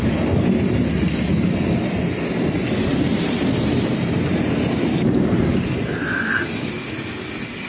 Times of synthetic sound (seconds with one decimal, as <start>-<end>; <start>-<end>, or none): 2.9-5.5